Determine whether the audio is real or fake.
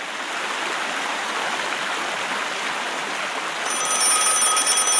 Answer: real